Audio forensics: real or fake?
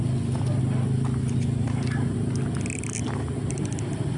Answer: real